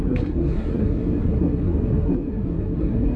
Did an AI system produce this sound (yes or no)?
yes